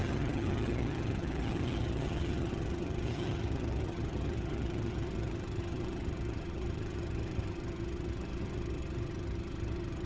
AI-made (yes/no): yes